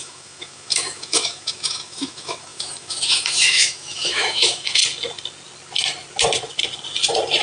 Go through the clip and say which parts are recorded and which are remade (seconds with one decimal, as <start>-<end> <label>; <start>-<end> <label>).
0.0-4.8 remade; 4.8-7.4 recorded